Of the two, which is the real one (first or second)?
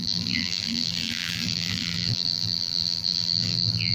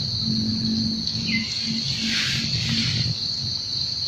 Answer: second